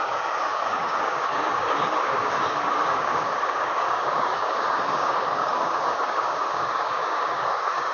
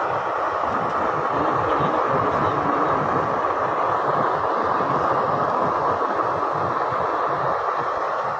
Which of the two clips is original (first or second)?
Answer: second